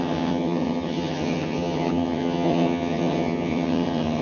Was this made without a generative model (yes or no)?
no